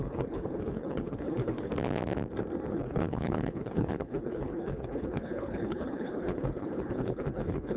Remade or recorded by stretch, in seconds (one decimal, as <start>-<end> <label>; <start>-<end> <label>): 0.0-1.7 remade; 1.7-2.7 recorded; 2.7-7.8 remade